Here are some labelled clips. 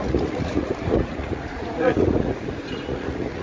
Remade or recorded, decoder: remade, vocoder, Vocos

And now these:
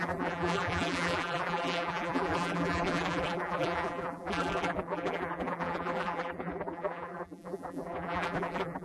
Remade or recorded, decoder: remade, vocoder, BigVGAN v2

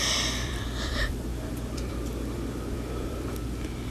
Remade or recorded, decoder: remade, vocoder, BigVGAN v2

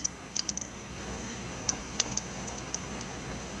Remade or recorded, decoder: remade, codec, SNAC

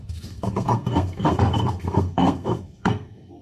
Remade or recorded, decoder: remade, codec, SNAC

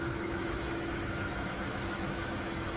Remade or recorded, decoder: remade, autoencoder, DAC-VAE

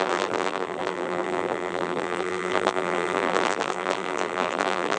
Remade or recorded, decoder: remade, vocoder, BigVGAN v2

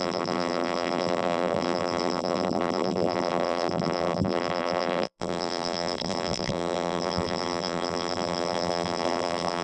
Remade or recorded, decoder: remade, vocoder, BigVGAN v2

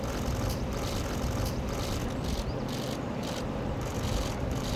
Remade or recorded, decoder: recorded